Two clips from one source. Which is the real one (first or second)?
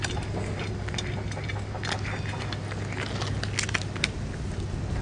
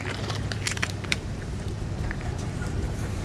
first